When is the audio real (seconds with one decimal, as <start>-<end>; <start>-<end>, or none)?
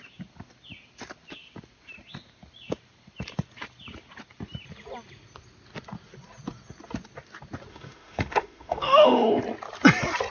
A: 0.0-7.7; 9.4-10.3